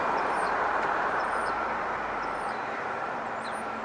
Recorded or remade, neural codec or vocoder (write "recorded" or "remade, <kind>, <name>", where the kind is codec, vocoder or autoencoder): remade, vocoder, BigVGAN v2